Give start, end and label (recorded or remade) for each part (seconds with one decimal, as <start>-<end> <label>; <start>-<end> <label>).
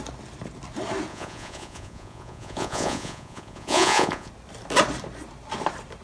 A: 0.0-1.1 recorded; 1.1-4.3 remade; 4.3-6.0 recorded